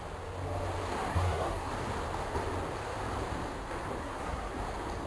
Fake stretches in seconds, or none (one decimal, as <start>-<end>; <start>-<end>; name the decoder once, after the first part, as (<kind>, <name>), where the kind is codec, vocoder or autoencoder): 1.1-1.7 (codec, SNAC); 4.0-4.5